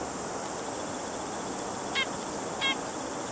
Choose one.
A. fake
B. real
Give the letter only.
B